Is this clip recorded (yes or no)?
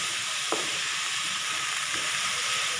no